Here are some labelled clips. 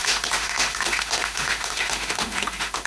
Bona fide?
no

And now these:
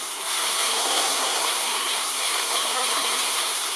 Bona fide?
no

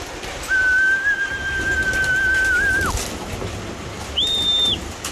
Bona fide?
yes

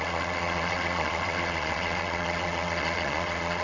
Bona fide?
no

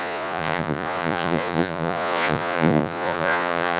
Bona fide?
no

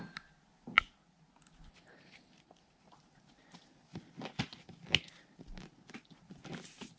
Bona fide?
yes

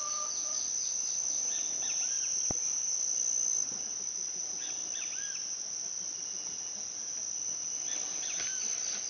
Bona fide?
yes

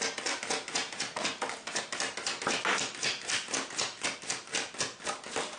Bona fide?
yes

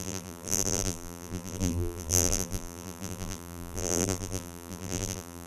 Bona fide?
no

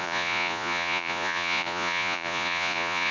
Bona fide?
no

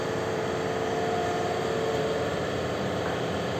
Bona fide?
no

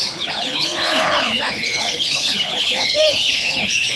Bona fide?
no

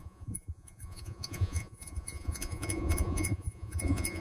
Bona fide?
no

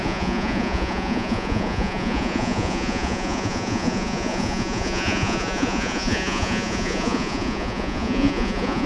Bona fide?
no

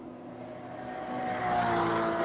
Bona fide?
yes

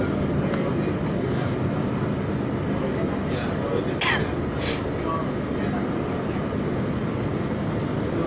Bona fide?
yes